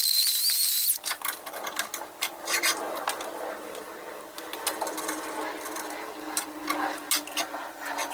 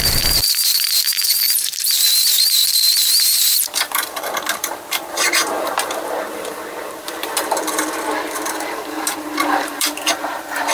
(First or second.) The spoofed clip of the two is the second